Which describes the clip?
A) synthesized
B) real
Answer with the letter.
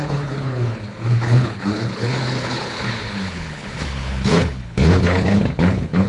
A